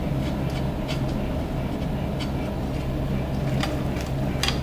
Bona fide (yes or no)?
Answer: yes